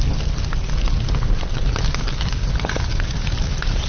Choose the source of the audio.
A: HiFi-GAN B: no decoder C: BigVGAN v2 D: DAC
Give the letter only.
C